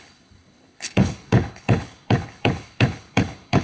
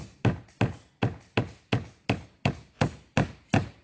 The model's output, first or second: first